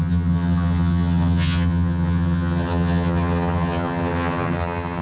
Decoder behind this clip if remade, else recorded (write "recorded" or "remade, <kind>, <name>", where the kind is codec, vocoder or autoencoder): remade, vocoder, HiFi-GAN